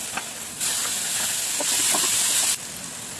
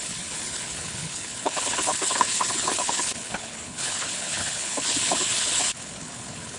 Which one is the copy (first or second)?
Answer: second